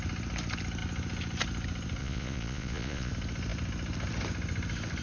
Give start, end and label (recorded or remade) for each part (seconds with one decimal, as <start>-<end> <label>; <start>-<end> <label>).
0.0-2.0 recorded; 2.0-3.1 remade; 3.1-5.0 recorded